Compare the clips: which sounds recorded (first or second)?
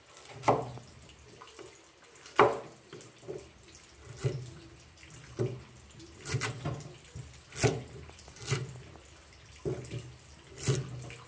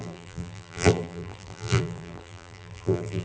first